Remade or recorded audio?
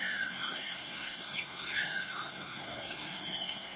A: remade